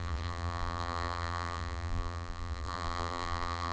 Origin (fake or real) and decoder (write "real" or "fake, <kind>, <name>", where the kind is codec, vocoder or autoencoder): fake, vocoder, BigVGAN v2